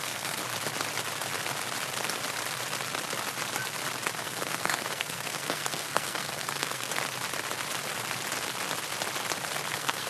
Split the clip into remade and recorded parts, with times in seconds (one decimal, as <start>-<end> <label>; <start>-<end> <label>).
0.0-0.4 remade; 0.4-4.2 recorded; 4.2-6.9 remade; 6.9-9.7 recorded; 9.7-10.1 remade